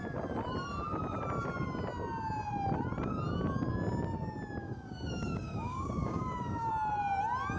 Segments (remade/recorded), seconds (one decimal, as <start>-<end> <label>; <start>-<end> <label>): 0.0-4.6 recorded; 4.6-6.7 remade; 6.7-7.6 recorded